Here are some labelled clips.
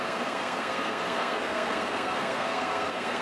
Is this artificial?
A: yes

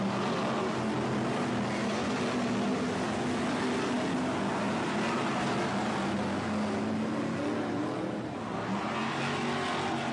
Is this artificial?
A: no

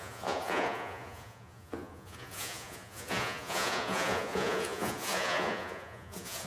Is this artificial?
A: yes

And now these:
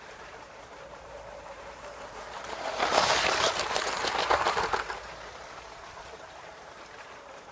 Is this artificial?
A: yes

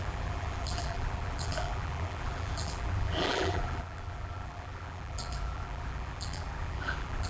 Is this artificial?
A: yes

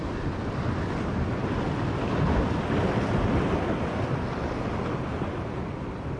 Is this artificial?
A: no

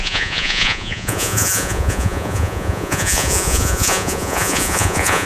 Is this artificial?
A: yes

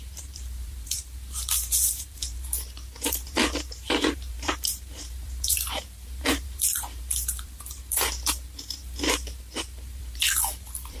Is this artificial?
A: yes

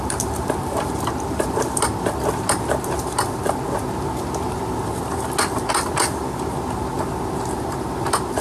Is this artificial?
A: no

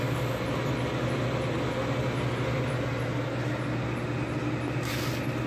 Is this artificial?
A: no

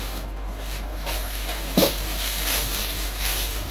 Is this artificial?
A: yes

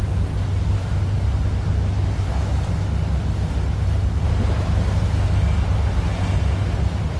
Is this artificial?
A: no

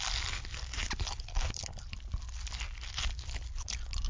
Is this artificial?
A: no